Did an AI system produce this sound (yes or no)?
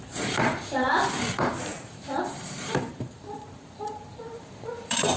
yes